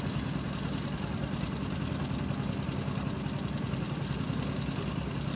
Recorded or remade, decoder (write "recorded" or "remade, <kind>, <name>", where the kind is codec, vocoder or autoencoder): recorded